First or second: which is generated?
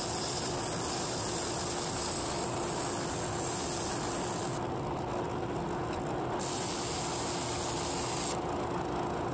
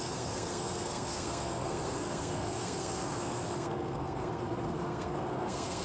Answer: second